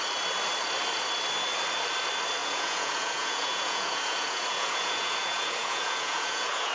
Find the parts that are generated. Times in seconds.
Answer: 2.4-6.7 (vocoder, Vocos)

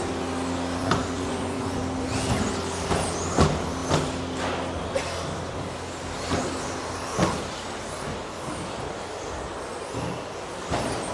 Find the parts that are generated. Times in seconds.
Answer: 0.8-1.8 (vocoder, Vocos)